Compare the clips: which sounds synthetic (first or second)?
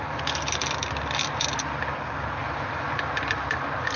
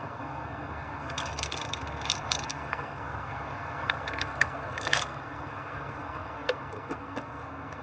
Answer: second